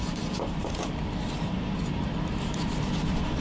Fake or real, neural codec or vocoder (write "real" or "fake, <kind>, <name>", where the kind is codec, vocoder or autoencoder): fake, vocoder, BigVGAN v2